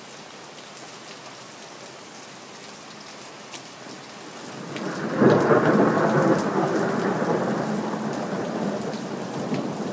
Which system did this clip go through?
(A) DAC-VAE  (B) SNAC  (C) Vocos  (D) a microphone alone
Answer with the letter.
D